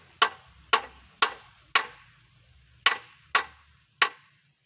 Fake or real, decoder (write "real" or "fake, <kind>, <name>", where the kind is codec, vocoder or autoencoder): real